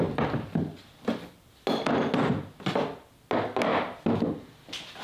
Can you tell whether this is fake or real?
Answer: real